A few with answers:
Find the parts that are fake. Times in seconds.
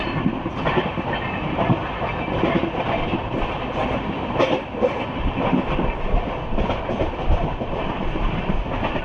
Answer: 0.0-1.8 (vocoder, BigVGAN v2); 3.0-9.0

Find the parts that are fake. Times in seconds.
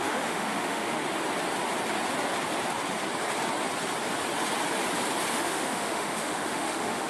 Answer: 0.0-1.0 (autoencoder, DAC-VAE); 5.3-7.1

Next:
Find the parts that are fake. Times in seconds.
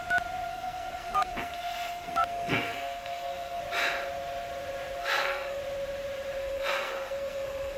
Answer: 0.5-3.6 (codec, SNAC); 5.0-5.6; 6.4-7.8